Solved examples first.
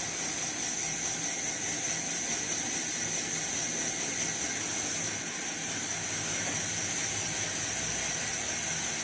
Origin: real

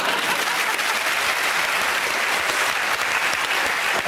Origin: real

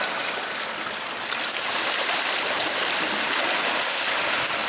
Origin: real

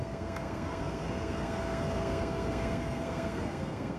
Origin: fake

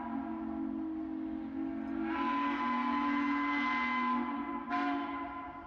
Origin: real